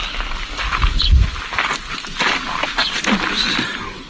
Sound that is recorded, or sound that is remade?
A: recorded